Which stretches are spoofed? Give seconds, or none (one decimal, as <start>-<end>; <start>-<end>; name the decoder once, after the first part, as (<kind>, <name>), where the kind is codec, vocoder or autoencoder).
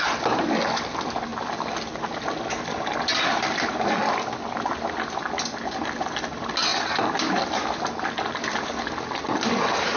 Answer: none